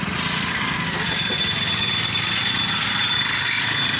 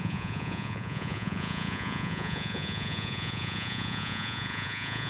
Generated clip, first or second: second